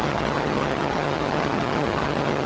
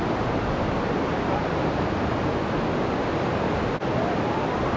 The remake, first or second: first